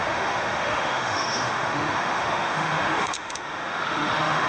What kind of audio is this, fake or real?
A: fake